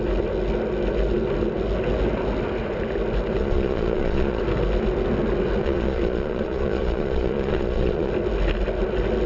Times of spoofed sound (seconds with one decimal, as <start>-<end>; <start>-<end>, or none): 3.4-4.4; 5.6-8.1